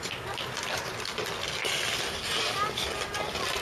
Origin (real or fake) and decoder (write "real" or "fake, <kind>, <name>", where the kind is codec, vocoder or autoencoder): real